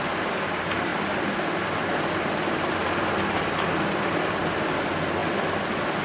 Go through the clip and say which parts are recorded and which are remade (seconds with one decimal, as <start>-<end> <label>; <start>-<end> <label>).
0.0-6.0 recorded